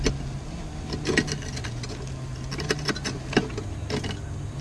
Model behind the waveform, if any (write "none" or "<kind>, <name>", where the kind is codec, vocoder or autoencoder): none